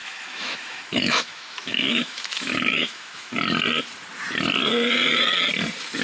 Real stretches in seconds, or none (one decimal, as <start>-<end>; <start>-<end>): 3.3-6.0